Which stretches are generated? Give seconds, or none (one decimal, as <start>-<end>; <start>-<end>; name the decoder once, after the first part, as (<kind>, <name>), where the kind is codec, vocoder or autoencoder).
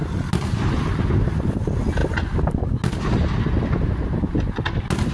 none